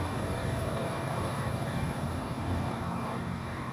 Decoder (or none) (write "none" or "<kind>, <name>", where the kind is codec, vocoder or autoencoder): codec, DAC